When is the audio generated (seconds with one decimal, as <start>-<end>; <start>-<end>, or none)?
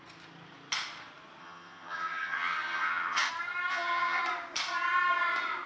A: 1.4-3.3; 3.7-4.2